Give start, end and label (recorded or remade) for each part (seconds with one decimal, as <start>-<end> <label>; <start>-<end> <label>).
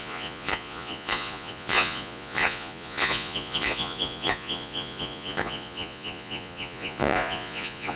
0.0-8.0 remade